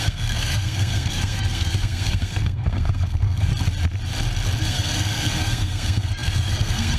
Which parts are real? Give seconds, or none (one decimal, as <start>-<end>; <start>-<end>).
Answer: 3.5-4.6

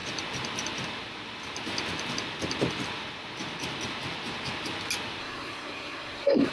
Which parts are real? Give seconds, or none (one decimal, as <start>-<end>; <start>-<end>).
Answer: 0.0-5.2

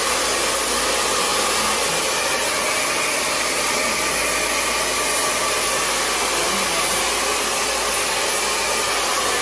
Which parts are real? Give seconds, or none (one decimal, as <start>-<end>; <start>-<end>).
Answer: 0.0-9.4

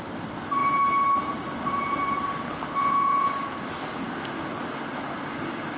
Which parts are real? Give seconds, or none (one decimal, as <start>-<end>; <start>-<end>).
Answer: 0.0-2.8; 3.3-5.8

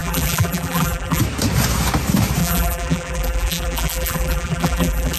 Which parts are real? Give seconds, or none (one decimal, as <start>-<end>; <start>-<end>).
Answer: 1.2-2.4

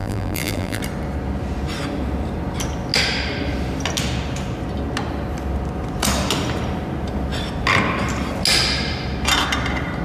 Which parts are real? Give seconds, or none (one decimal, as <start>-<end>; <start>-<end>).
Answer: 0.8-10.0

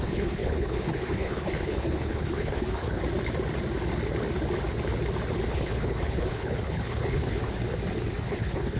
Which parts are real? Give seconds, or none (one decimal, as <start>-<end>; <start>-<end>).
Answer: 3.0-5.5; 7.6-8.2

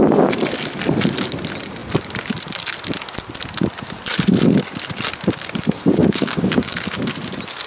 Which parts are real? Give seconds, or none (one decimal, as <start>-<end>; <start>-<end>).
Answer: 0.0-6.0; 7.0-7.7